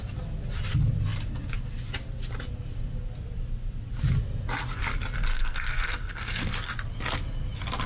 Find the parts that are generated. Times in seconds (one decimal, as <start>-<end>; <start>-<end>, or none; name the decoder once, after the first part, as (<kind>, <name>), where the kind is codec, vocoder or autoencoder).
5.3-6.5 (codec, SNAC)